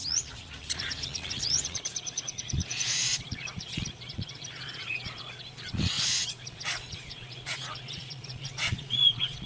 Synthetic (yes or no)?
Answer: yes